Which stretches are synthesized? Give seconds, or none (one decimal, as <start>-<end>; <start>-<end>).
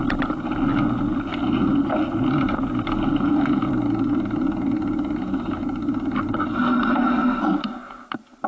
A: none